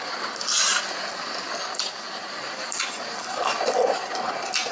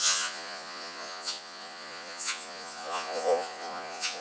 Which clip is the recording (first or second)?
first